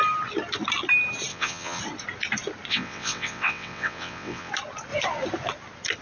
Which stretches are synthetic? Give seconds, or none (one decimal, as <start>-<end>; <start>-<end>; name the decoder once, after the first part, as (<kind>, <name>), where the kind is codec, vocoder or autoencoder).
1.3-1.8 (vocoder, WaveNeXt); 2.7-4.5

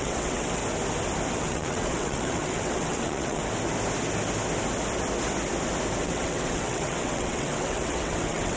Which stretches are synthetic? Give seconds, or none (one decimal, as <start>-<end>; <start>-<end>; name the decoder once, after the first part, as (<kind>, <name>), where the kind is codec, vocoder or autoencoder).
0.0-0.6 (vocoder, WaveNeXt); 1.3-3.4; 6.0-8.6

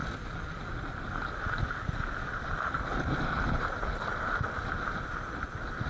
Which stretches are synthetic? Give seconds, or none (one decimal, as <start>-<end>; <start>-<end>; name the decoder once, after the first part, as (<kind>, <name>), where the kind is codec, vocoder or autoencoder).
none